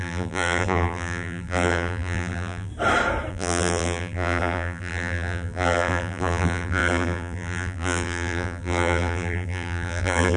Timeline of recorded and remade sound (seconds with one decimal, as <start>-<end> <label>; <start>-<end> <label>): 0.0-2.7 remade; 2.7-3.3 recorded; 3.3-10.4 remade